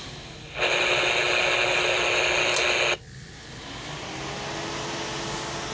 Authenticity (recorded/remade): recorded